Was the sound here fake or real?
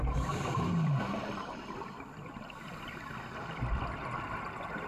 fake